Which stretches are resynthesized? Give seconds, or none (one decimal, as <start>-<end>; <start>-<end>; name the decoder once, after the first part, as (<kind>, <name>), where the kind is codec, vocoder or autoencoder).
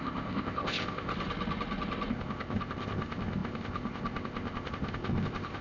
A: 0.0-1.1 (codec, ZipCodec); 2.1-5.6